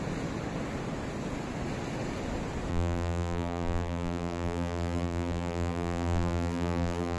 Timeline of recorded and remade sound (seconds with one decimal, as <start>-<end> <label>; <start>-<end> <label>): 0.0-2.7 recorded; 2.7-7.2 remade